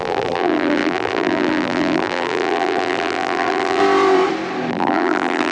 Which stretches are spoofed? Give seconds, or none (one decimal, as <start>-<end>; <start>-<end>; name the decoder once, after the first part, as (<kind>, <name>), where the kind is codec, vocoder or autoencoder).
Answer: 0.0-3.8 (vocoder, BigVGAN v2); 4.7-5.5